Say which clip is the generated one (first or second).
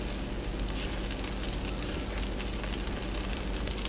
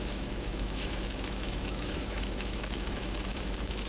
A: second